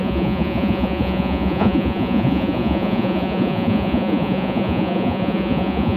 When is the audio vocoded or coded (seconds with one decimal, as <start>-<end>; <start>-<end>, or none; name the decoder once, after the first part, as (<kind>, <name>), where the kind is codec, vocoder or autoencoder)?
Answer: 0.0-6.0 (vocoder, Vocos)

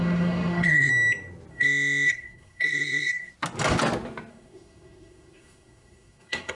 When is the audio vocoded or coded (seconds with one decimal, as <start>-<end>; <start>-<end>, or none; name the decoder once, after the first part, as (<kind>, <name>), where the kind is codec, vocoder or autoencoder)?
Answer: 0.0-0.9 (codec, SNAC); 1.5-3.3; 4.3-6.6

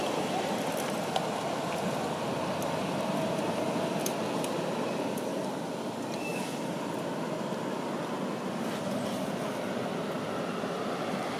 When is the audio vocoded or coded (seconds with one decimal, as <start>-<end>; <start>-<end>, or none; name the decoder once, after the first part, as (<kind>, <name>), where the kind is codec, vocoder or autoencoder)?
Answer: none

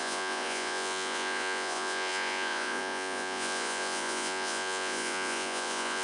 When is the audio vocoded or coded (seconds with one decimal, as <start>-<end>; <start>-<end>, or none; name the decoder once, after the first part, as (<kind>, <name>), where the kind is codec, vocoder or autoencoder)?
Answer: 0.0-6.0 (vocoder, Vocos)